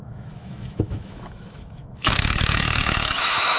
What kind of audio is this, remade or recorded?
remade